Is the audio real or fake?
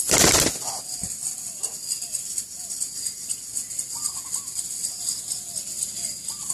real